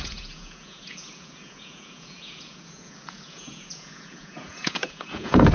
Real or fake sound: fake